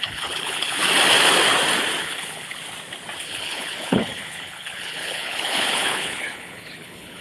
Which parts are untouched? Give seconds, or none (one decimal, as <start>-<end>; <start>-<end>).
0.8-2.0; 2.6-3.2